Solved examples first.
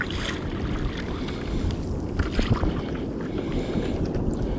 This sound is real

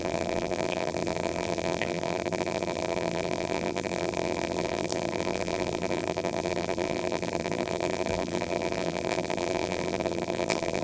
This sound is fake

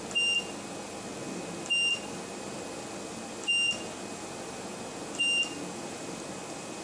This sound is real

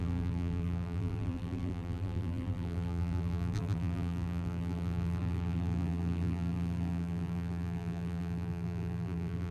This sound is fake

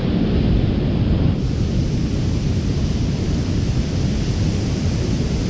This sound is fake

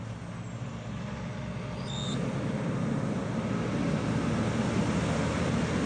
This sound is real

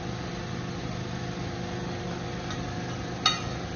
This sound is real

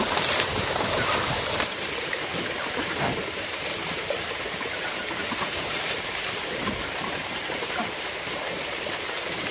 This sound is fake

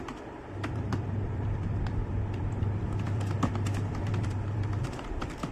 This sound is fake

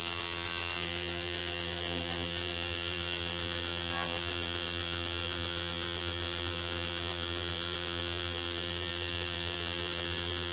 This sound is fake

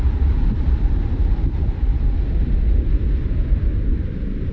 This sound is fake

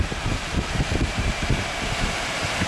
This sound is fake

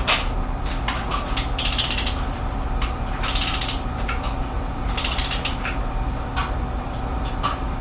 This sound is real